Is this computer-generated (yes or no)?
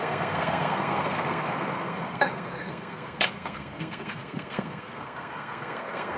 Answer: yes